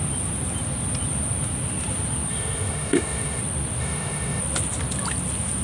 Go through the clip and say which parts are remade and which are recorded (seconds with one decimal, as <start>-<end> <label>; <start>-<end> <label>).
0.0-2.3 recorded; 2.3-3.4 remade; 3.4-3.8 recorded; 3.8-4.4 remade; 4.4-5.6 recorded